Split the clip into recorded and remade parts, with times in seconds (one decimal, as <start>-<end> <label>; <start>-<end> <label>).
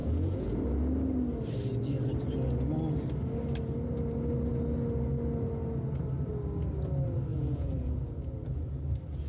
0.0-0.6 remade; 0.6-7.3 recorded; 7.3-8.7 remade; 8.7-9.3 recorded